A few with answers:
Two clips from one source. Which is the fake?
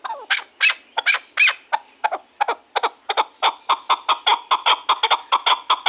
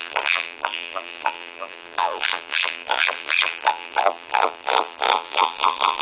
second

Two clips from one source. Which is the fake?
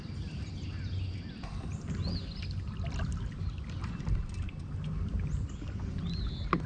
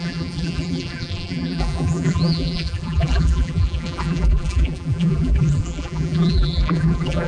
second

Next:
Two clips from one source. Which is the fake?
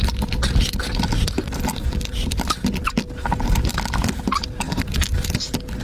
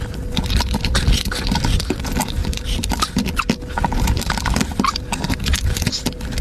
second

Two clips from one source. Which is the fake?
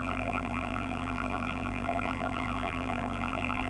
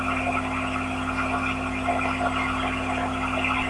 first